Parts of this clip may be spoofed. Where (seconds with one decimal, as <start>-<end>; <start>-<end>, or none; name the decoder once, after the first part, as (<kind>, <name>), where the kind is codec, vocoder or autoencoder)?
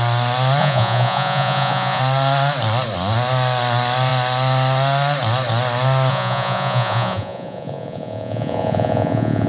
0.6-2.0 (vocoder, Vocos); 6.1-9.5